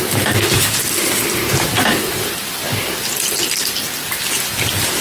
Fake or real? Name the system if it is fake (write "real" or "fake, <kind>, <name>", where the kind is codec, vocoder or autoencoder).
fake, vocoder, BigVGAN v2